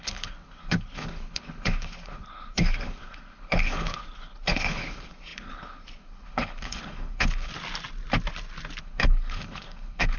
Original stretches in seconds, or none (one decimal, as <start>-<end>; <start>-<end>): 7.5-8.8